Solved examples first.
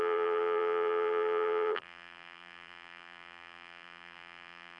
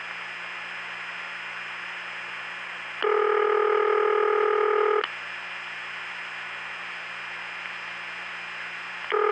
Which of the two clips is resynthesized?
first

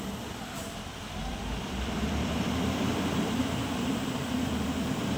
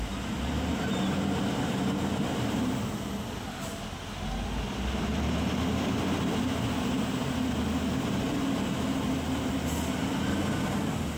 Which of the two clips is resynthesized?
first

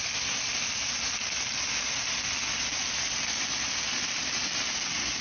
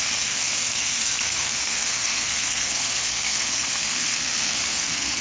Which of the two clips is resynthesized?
second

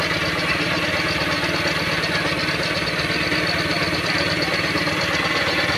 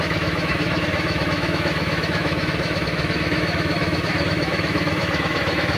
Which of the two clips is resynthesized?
second